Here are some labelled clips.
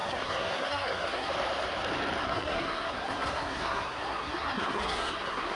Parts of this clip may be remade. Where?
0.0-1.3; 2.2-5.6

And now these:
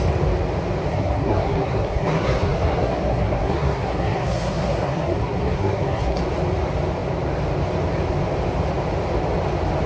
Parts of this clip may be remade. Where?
0.9-6.2

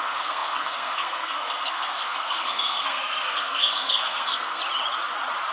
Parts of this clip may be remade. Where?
0.0-4.6

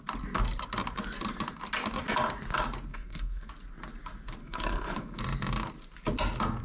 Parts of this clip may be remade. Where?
2.9-3.5; 4.4-5.2

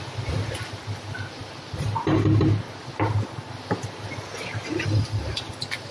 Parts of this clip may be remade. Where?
none